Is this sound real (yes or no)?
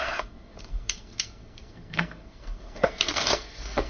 no